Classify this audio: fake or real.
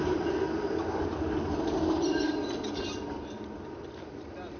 real